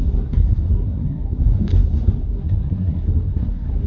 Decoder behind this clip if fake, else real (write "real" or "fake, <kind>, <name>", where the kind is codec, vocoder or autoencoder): fake, codec, SNAC